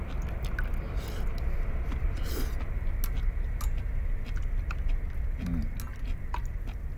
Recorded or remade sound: recorded